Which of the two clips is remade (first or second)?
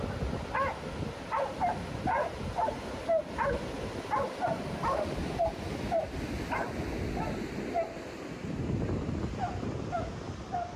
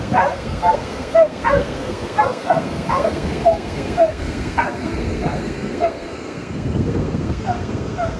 second